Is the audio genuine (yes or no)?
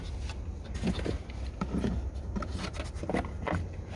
yes